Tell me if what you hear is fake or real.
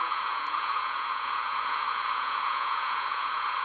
fake